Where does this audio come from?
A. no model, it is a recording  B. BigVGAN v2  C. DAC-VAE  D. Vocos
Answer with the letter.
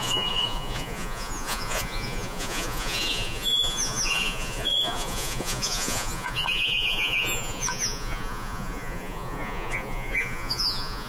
D